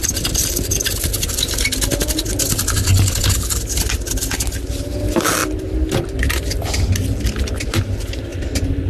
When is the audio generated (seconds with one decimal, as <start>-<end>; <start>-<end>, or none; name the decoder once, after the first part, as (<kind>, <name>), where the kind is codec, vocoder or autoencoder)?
none